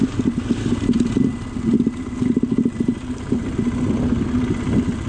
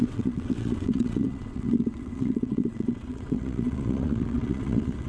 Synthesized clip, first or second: second